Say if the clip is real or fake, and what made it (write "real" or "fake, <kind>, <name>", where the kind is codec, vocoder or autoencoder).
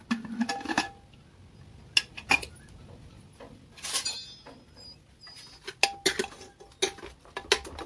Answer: real